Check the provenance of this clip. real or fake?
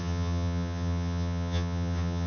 fake